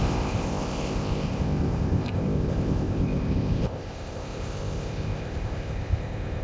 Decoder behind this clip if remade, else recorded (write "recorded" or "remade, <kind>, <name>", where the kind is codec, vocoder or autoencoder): remade, codec, ZipCodec